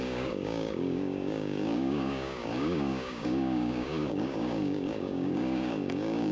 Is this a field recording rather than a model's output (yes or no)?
no